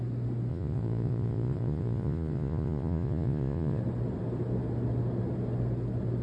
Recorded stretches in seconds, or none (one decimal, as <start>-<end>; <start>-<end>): 0.0-0.5; 3.8-6.2